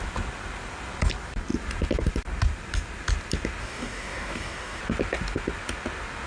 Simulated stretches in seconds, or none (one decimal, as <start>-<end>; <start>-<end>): 3.6-4.8